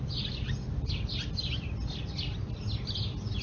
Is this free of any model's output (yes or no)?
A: yes